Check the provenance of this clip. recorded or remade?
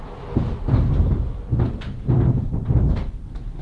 recorded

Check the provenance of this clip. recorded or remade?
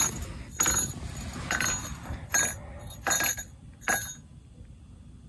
recorded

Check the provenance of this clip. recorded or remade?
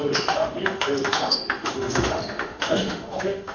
remade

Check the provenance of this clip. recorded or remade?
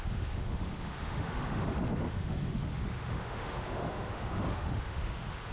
remade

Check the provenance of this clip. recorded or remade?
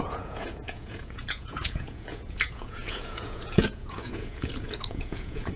remade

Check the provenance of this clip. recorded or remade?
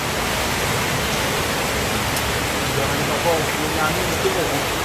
recorded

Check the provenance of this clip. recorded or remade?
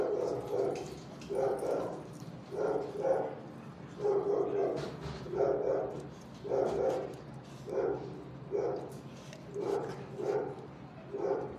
recorded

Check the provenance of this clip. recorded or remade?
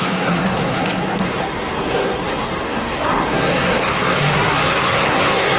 remade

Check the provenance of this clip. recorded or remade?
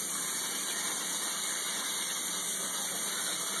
recorded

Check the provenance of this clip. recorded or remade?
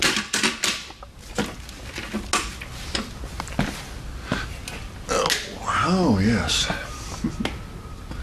recorded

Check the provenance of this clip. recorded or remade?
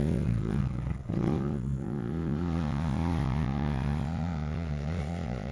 remade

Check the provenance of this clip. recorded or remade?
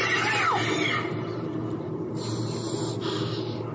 recorded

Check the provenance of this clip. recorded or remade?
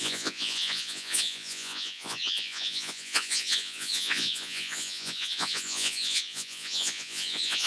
remade